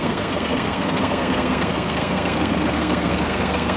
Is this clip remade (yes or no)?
yes